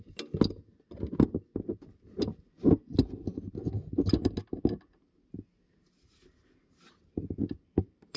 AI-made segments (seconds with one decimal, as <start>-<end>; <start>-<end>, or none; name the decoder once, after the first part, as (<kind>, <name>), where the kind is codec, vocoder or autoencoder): none